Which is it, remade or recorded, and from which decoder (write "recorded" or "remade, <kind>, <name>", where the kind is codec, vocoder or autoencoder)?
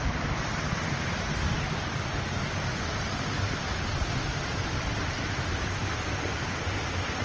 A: recorded